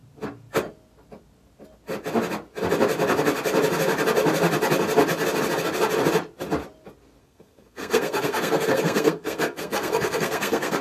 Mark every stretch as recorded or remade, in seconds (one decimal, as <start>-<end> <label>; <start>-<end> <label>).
0.0-7.2 recorded; 7.2-10.8 remade